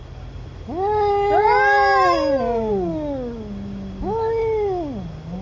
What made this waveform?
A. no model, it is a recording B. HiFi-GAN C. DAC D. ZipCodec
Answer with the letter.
A